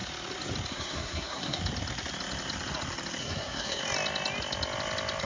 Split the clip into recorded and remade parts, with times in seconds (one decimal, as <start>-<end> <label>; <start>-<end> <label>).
0.0-0.7 recorded; 0.7-1.6 remade; 1.6-3.2 recorded; 3.2-3.8 remade; 3.8-5.2 recorded